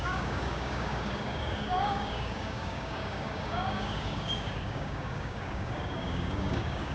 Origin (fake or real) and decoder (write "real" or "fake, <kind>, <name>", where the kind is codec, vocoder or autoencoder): fake, codec, DAC